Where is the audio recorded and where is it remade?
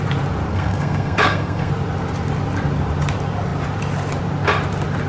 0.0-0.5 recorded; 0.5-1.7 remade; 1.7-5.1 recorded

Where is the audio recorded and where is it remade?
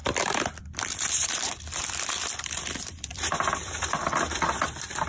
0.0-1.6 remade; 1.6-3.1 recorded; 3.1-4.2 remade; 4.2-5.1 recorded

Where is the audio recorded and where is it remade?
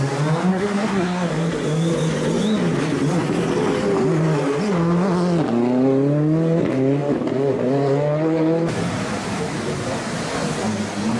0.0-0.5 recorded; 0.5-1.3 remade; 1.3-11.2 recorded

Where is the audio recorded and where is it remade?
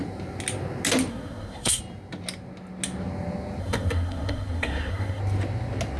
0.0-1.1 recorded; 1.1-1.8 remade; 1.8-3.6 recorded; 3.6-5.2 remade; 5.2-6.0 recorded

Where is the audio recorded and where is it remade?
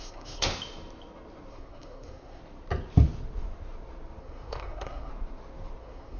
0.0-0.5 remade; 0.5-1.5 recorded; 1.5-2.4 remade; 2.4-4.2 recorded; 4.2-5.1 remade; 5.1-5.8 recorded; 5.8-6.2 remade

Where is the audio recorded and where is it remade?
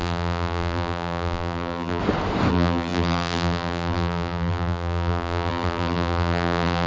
0.0-2.0 remade; 2.0-2.5 recorded; 2.5-6.9 remade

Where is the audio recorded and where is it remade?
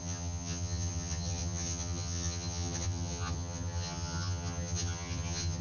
0.0-5.6 remade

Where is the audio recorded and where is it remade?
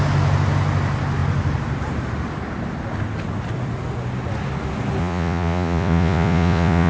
0.0-5.0 recorded; 5.0-6.9 remade